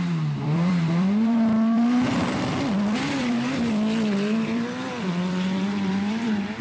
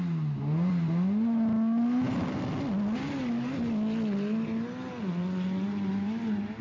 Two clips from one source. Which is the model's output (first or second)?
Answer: first